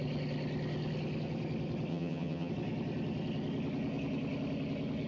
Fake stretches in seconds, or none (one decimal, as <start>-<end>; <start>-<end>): 1.9-2.5